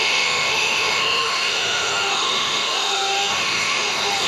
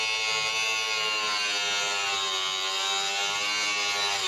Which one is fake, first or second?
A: first